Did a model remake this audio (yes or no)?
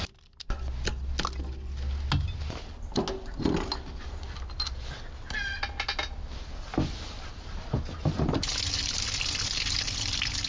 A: no